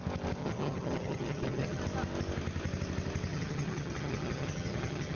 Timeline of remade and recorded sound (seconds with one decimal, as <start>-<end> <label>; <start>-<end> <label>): 0.0-0.4 recorded; 0.4-1.8 remade; 1.8-3.3 recorded; 3.3-5.2 remade